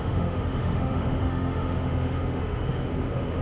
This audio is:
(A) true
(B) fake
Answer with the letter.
B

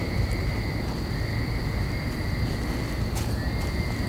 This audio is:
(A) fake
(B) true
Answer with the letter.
B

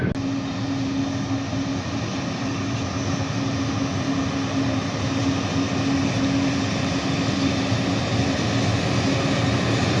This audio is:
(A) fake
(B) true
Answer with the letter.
B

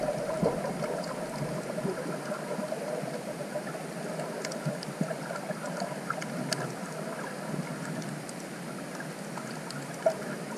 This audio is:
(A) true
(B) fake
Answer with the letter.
A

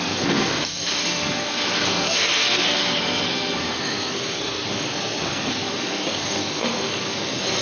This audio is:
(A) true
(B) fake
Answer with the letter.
B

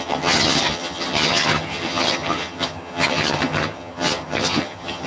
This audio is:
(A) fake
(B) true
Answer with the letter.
A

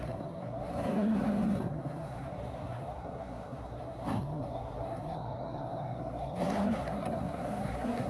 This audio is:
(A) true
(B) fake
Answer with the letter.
B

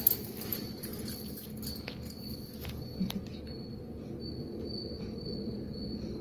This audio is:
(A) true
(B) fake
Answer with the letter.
A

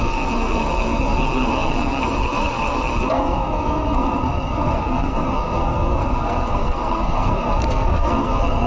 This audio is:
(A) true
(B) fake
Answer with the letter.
B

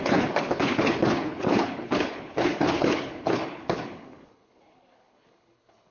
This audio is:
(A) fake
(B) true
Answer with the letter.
A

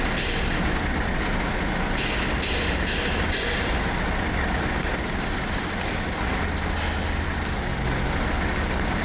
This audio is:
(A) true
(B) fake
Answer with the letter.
A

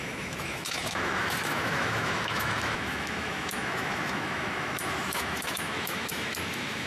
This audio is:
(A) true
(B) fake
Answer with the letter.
B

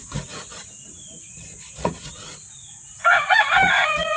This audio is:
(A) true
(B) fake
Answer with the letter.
B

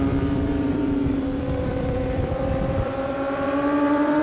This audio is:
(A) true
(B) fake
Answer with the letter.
B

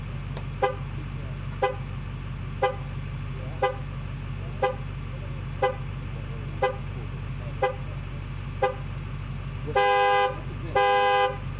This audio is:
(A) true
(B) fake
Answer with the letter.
A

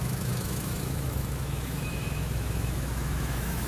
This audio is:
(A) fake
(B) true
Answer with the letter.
A